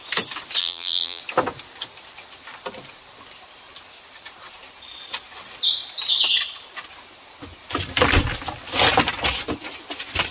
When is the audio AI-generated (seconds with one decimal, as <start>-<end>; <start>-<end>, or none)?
0.6-1.2